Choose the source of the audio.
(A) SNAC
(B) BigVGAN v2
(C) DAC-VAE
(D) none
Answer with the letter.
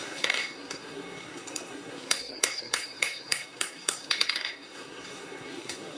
A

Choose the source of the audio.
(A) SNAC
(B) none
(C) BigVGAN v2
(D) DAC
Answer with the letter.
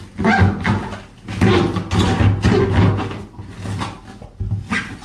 B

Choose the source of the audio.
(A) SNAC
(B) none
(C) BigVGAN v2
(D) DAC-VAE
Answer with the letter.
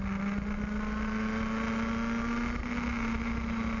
B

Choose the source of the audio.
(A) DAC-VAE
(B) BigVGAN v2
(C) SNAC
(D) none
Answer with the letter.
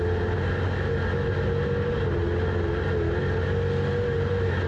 D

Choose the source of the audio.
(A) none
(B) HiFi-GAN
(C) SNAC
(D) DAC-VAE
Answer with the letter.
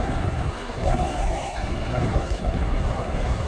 C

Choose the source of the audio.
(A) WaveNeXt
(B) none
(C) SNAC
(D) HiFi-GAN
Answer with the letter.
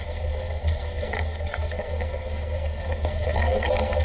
C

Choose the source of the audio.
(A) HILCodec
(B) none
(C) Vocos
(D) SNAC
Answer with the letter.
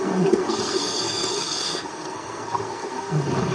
D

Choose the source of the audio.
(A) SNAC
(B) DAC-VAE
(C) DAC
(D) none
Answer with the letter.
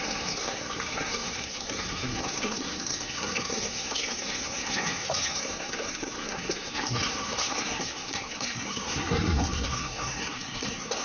A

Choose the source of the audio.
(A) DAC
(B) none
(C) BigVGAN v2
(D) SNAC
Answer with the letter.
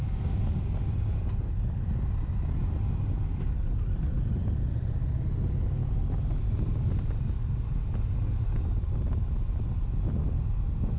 B